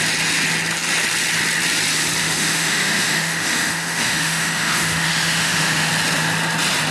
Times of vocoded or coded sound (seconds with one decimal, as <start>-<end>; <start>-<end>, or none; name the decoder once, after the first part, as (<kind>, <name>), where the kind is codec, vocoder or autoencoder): 2.2-5.9 (autoencoder, DAC-VAE)